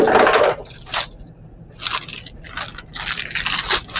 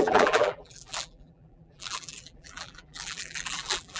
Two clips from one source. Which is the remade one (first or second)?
second